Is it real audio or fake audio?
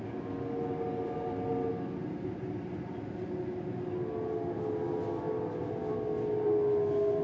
real